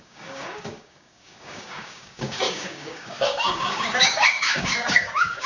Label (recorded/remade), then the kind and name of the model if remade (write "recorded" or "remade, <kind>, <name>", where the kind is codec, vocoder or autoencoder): remade, codec, DAC